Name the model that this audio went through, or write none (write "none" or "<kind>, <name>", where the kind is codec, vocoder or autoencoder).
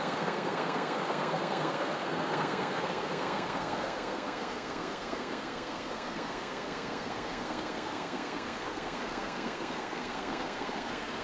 codec, SNAC